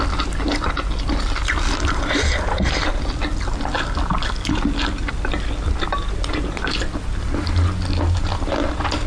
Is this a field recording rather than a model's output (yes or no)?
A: yes